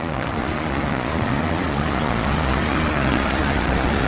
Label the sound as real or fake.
fake